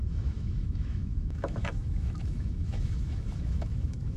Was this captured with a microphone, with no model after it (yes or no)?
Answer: no